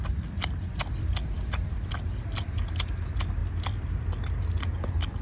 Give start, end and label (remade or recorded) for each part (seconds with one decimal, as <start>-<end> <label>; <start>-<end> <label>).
0.0-3.4 recorded; 3.4-4.0 remade; 4.0-5.2 recorded